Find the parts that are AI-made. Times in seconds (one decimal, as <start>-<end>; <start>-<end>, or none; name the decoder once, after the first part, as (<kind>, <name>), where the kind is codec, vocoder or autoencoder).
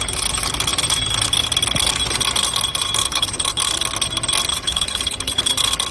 3.0-3.6 (codec, HILCodec); 4.5-5.5